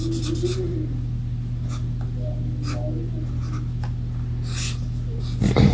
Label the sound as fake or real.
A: real